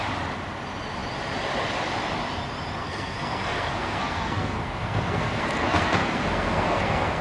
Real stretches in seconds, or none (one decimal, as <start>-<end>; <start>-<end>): 0.0-2.8